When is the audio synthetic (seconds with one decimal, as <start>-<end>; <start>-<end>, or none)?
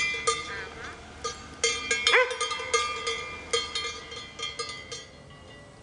none